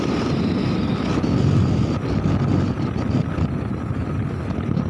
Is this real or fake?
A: real